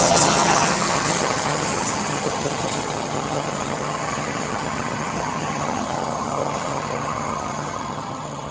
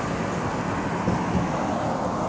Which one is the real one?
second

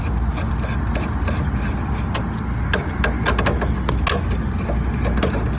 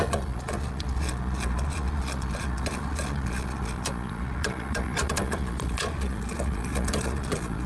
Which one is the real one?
first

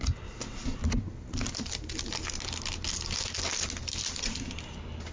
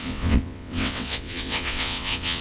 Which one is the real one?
first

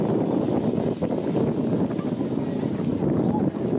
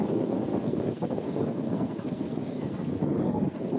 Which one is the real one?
first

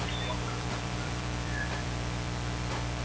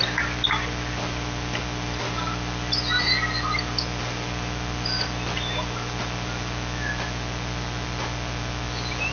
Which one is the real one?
second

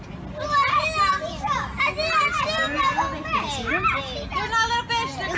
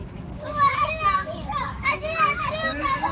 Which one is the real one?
first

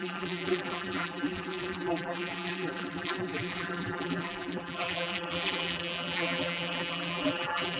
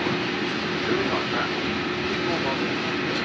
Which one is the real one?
second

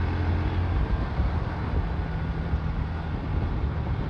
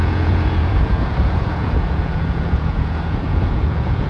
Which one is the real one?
first